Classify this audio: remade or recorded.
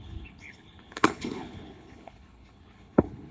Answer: remade